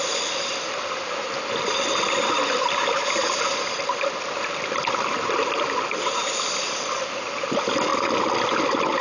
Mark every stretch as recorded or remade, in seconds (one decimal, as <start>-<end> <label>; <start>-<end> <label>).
0.0-9.0 recorded